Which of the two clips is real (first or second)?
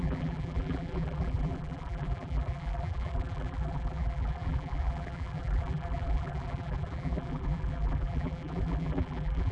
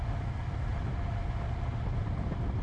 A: second